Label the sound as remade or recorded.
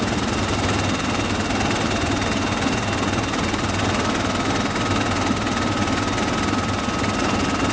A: recorded